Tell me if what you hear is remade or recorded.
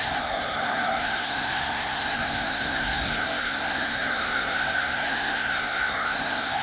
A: remade